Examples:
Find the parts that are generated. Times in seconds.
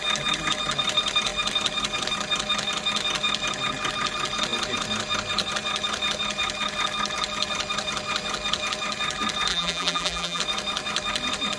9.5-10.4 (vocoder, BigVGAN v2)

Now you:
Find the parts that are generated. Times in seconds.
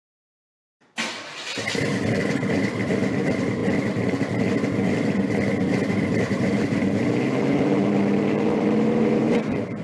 0.0-3.6 (vocoder, BigVGAN v2); 5.9-9.8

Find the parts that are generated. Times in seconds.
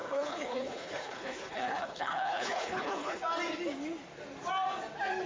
0.0-3.2 (codec, HILCodec)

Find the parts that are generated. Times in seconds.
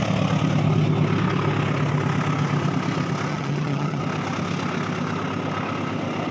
3.3-4.0 (vocoder, HiFi-GAN)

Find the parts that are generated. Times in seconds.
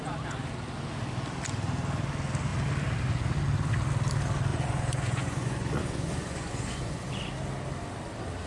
4.5-7.2 (vocoder, Vocos)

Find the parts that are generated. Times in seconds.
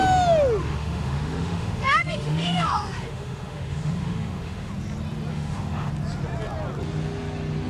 0.6-4.7 (autoencoder, DAC-VAE); 5.3-5.9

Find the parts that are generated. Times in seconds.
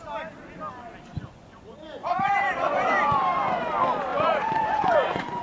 1.1-1.6 (vocoder, Vocos); 2.0-2.9; 4.1-5.4